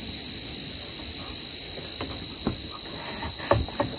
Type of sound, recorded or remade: recorded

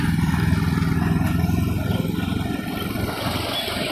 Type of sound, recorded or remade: recorded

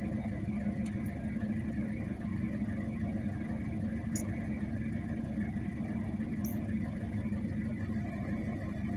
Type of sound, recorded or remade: recorded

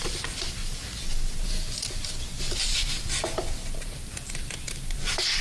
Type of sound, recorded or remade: remade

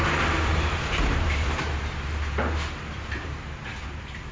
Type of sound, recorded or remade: remade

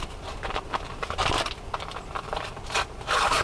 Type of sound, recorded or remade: remade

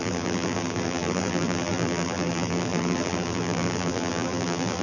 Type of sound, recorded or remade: remade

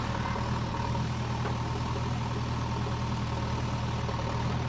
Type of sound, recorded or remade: recorded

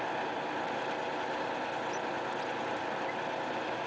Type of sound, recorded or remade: recorded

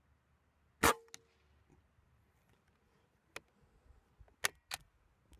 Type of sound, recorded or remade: recorded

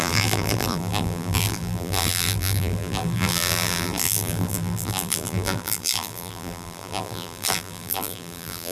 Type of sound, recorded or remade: remade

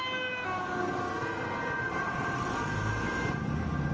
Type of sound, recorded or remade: recorded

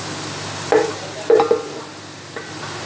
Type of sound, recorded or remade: recorded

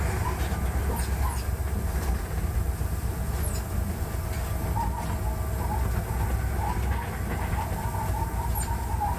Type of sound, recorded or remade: recorded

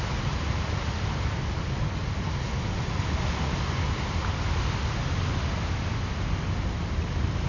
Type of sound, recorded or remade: recorded